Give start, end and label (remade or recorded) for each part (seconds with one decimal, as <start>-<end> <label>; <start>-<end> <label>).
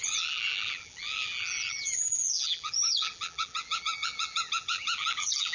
0.0-5.5 remade